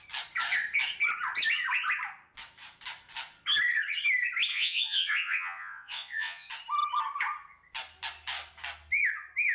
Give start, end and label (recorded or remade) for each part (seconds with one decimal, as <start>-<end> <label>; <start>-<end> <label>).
0.0-4.5 recorded; 4.5-6.5 remade; 6.5-9.5 recorded